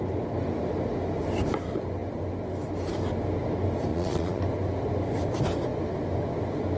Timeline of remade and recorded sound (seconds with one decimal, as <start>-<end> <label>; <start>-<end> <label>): 0.0-3.9 recorded; 3.9-4.4 remade; 4.4-6.8 recorded